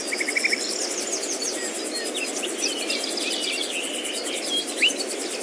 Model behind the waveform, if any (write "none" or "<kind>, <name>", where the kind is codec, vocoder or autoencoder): none